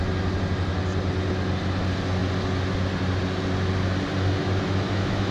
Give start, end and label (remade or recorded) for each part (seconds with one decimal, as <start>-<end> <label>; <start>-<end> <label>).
0.0-4.4 recorded; 4.4-5.3 remade